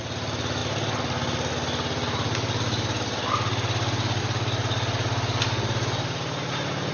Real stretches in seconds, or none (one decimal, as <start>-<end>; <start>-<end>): 0.0-6.9